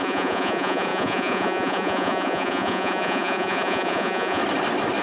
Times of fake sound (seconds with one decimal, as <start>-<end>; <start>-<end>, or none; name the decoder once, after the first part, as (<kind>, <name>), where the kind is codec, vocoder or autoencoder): 0.0-4.4 (vocoder, Vocos)